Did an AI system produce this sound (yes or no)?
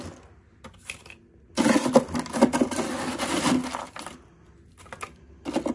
no